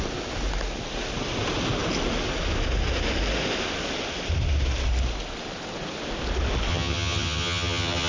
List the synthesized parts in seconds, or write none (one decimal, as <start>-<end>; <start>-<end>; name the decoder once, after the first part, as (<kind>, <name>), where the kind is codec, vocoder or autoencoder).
6.7-8.1 (vocoder, HiFi-GAN)